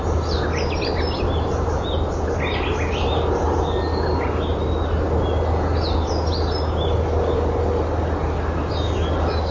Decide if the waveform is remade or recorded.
recorded